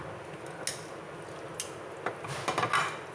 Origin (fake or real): real